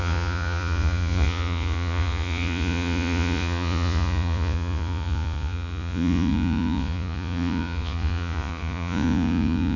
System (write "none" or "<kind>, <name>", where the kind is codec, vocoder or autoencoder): vocoder, Vocos